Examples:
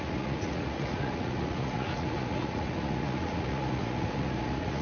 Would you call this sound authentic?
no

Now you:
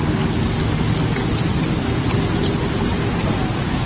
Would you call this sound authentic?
yes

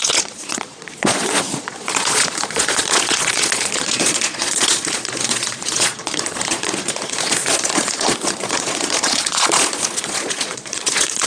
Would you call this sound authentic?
no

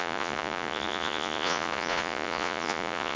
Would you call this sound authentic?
no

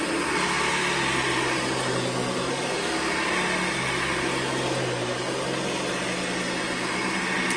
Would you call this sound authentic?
yes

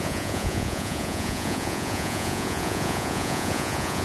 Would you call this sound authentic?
no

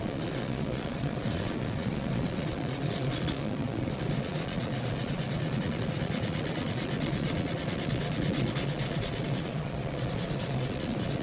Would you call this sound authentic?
no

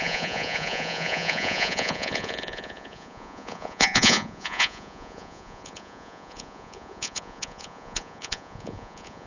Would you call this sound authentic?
no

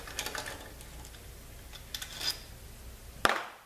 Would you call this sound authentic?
yes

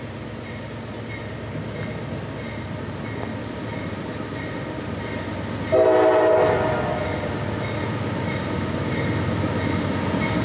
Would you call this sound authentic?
yes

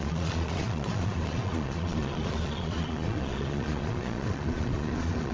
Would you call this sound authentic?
no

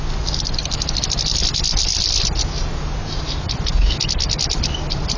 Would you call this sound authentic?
yes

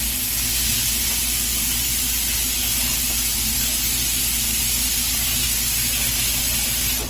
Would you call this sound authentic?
yes